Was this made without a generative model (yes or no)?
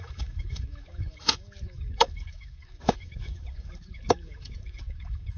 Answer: no